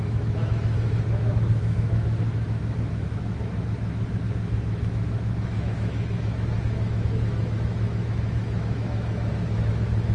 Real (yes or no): no